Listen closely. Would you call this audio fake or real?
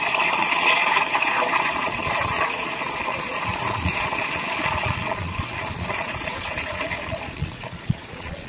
fake